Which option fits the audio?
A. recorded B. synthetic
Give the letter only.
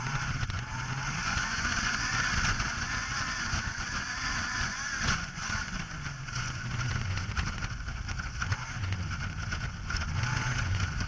B